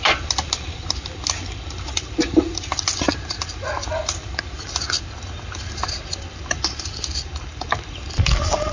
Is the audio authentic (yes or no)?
yes